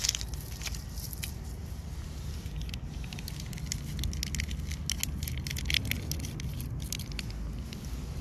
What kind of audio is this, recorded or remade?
recorded